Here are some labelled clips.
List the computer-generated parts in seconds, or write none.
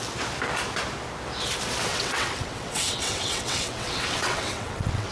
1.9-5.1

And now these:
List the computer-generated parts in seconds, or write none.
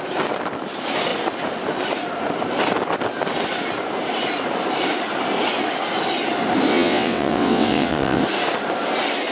6.7-8.2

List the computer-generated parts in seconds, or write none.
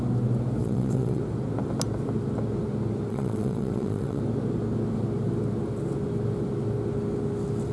0.6-1.2; 3.1-4.2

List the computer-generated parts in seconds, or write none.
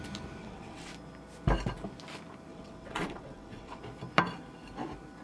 0.4-0.9; 2.5-3.8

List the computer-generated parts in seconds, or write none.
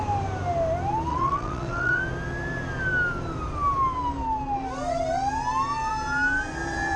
1.1-2.0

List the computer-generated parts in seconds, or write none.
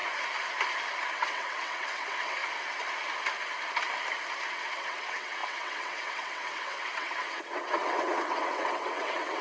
1.1-2.4; 4.5-9.4